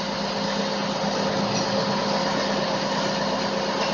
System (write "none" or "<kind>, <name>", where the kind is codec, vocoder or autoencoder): none